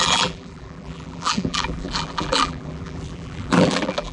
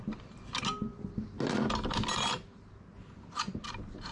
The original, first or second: second